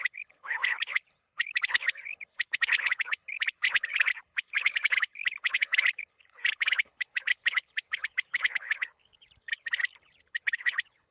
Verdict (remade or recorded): remade